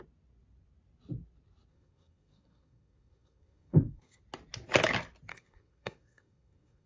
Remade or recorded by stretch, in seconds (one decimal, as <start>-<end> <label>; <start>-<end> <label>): 0.0-1.7 recorded; 1.7-4.2 remade; 4.2-5.3 recorded; 5.3-6.9 remade